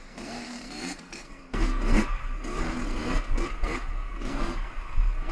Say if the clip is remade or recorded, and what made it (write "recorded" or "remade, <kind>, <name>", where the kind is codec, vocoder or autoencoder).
remade, codec, SNAC